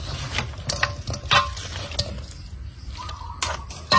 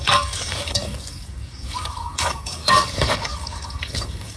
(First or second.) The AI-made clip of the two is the second